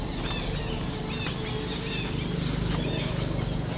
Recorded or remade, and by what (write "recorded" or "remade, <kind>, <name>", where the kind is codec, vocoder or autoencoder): recorded